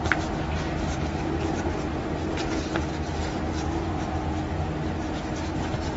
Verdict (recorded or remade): recorded